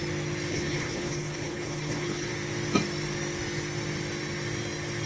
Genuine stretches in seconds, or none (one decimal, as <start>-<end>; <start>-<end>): 0.0-0.5; 2.3-5.1